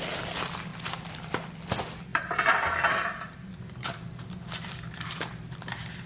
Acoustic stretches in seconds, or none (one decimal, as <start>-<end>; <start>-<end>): 0.0-0.7; 1.4-2.1